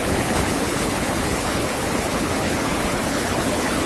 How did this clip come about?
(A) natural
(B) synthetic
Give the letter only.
B